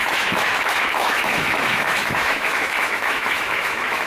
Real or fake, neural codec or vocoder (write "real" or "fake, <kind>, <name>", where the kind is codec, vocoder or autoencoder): fake, autoencoder, DAC-VAE